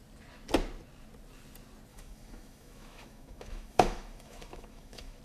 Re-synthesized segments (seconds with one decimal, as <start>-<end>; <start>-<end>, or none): 1.9-5.2